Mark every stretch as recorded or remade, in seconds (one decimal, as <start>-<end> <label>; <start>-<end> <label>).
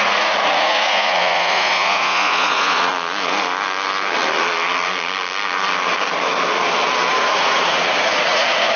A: 0.0-2.9 remade; 2.9-7.1 recorded; 7.1-8.8 remade